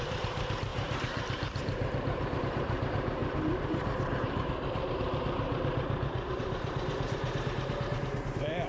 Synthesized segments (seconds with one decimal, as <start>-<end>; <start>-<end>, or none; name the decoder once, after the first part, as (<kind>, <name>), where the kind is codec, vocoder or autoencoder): 0.0-3.2 (vocoder, BigVGAN v2); 4.2-8.7